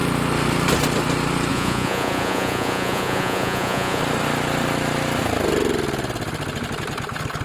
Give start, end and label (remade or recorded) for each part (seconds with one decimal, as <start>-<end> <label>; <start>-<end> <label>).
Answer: 0.0-1.5 recorded; 1.5-4.0 remade; 4.0-7.4 recorded